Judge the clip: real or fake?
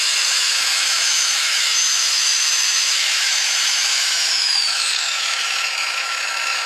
fake